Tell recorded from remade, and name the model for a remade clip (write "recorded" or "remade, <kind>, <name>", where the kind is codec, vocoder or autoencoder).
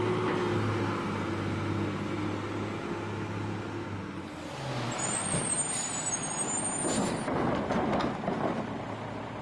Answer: recorded